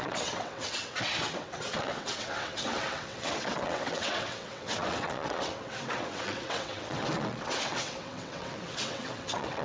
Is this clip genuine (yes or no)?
no